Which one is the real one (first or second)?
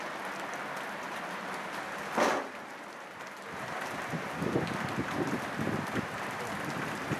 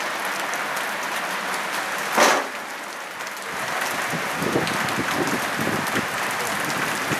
second